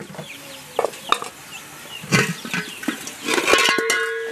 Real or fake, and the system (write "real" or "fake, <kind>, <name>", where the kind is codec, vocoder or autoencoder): real